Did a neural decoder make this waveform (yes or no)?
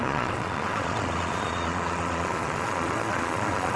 yes